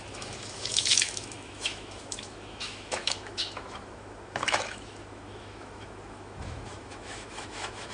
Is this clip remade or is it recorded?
remade